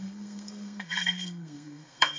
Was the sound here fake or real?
fake